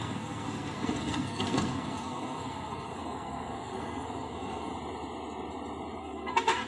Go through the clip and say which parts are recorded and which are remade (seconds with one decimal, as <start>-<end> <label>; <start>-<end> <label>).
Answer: 0.0-4.7 remade; 4.7-6.0 recorded; 6.0-6.7 remade